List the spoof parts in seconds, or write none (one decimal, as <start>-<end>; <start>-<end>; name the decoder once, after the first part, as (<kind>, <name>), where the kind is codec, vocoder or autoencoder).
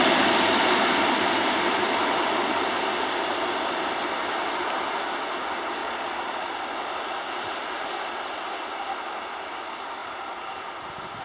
5.8-6.5 (vocoder, Vocos)